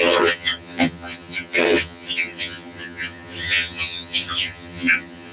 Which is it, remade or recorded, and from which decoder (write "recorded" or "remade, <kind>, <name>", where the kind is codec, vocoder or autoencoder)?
remade, vocoder, HiFi-GAN